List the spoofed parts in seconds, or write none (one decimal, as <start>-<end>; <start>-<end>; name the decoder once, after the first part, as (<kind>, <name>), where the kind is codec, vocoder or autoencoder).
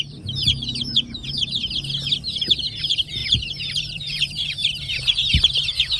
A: 0.0-1.6 (vocoder, BigVGAN v2); 2.8-3.2; 3.8-4.6; 5.4-6.0